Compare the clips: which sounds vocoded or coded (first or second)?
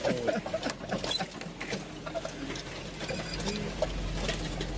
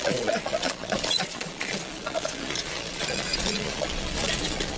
second